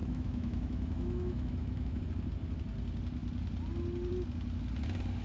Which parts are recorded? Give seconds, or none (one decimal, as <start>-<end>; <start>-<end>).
2.0-5.2